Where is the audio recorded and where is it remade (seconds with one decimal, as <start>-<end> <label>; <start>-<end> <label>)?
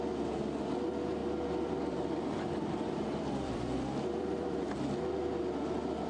0.0-1.2 recorded; 1.2-4.6 remade; 4.6-6.1 recorded